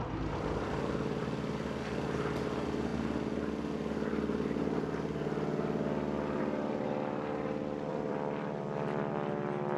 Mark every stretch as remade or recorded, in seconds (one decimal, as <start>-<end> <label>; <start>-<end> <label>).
0.0-7.9 recorded; 7.9-9.1 remade; 9.1-9.8 recorded